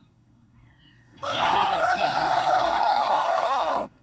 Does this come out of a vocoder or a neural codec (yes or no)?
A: yes